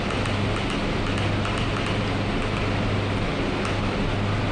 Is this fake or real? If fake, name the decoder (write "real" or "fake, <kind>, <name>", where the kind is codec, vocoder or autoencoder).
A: real